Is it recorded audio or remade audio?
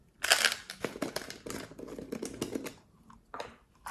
recorded